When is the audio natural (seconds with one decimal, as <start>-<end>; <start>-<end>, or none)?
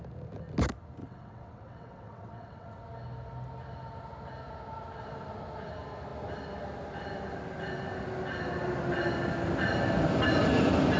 0.0-1.0; 2.8-11.0